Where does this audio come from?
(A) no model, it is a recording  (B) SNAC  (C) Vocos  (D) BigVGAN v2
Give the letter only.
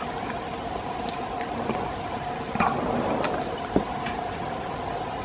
A